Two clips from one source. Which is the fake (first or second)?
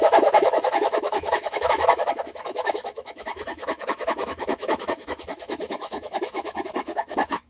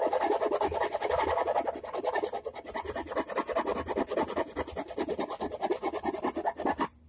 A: first